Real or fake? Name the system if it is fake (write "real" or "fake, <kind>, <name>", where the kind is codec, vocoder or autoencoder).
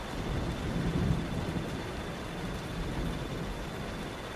real